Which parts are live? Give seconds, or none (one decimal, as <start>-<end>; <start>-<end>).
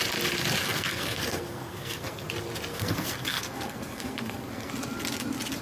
0.0-0.6; 2.3-2.7; 4.7-5.6